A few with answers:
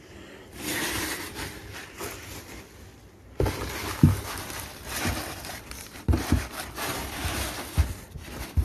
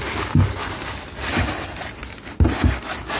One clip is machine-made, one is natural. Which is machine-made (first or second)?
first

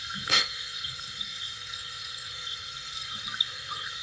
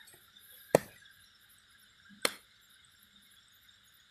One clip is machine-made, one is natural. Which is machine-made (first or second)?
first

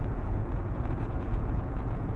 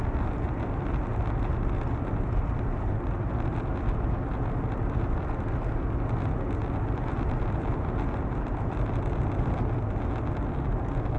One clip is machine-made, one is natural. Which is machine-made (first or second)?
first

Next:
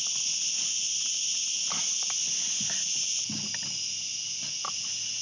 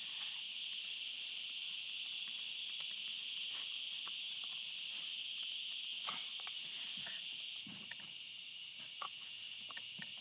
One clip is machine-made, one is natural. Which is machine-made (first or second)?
second